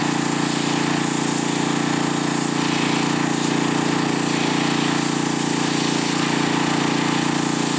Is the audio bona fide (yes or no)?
yes